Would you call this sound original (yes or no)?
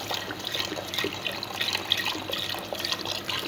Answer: yes